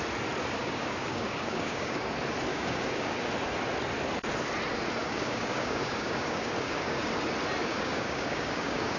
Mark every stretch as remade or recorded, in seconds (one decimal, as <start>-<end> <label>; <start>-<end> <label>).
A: 0.0-0.6 recorded; 0.6-2.0 remade; 2.0-2.5 recorded; 2.5-3.3 remade; 3.3-5.0 recorded; 5.0-7.1 remade; 7.1-7.6 recorded; 7.6-9.0 remade